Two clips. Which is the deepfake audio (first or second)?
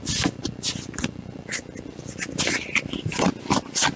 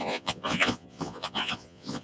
second